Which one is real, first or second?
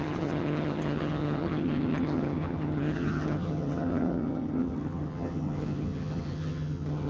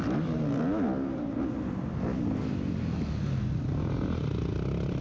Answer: second